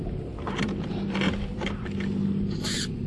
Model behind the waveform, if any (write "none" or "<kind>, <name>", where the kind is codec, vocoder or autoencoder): vocoder, BigVGAN v2